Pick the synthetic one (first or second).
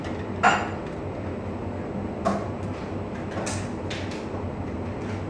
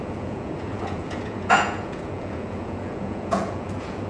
second